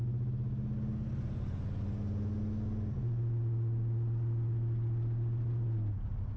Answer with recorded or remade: recorded